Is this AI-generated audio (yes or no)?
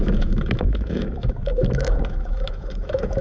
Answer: yes